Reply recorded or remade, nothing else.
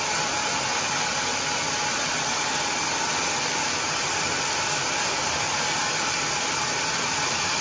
recorded